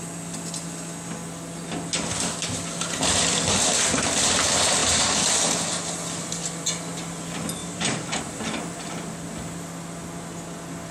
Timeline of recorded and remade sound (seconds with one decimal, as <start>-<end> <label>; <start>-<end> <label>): 0.0-7.6 recorded; 7.6-8.2 remade; 8.2-10.9 recorded